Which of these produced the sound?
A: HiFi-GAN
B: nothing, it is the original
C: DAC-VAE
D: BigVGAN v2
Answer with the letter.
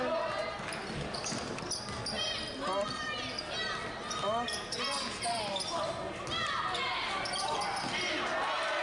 B